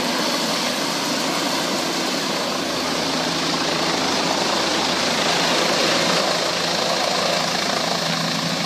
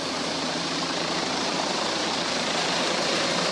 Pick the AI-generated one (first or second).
second